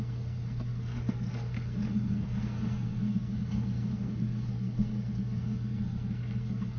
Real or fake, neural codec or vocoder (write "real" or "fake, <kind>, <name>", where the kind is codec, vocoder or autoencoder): fake, codec, SNAC